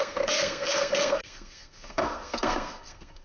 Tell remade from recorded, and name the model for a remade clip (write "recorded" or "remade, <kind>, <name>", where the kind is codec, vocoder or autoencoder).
remade, codec, SNAC